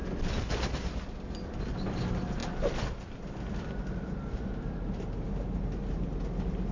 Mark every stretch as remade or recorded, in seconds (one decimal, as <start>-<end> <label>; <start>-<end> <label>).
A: 0.0-6.7 recorded